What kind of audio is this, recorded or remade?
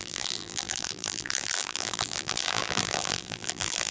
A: remade